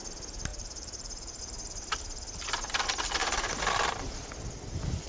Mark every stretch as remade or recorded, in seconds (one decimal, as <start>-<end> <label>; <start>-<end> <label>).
0.0-0.5 recorded; 0.5-1.4 remade; 1.4-5.1 recorded